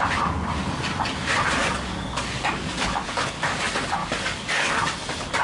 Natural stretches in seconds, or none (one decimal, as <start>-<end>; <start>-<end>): 0.0-1.6; 3.6-4.0; 4.7-5.4